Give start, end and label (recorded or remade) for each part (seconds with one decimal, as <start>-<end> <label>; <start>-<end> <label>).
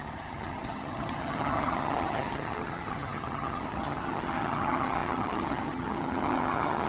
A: 0.0-6.9 remade